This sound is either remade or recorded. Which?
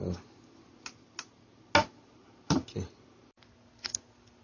recorded